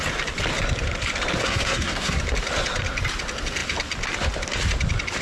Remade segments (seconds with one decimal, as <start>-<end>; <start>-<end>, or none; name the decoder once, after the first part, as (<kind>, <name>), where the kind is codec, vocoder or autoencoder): 1.4-2.2 (codec, SNAC)